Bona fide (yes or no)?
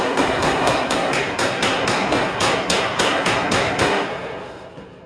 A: no